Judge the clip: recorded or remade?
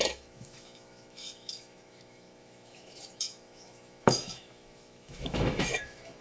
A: remade